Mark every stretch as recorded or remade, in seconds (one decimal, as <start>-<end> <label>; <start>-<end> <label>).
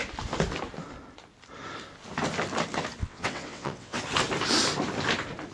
0.0-3.0 recorded; 3.0-4.0 remade; 4.0-5.5 recorded